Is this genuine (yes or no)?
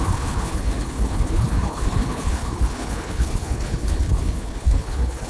no